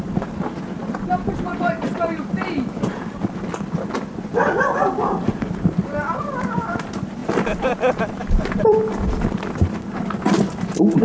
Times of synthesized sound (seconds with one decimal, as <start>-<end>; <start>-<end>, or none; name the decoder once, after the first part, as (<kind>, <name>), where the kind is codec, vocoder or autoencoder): none